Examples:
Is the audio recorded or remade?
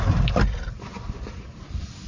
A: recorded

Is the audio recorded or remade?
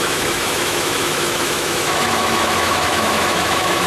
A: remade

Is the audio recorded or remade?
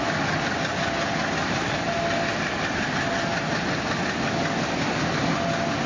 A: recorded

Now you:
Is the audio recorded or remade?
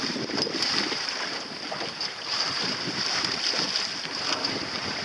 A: remade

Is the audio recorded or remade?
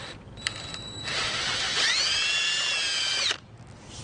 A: recorded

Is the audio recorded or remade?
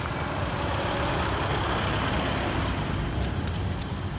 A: recorded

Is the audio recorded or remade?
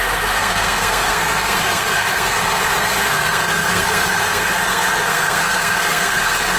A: remade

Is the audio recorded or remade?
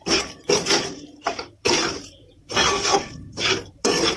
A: remade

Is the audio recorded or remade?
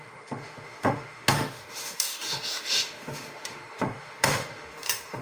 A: remade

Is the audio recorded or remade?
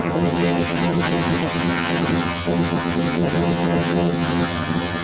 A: remade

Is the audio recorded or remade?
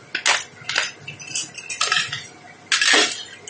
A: recorded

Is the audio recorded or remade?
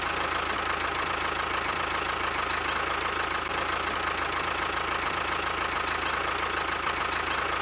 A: recorded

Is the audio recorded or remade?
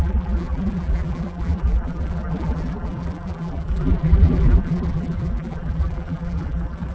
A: remade